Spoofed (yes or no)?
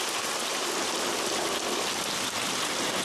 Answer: no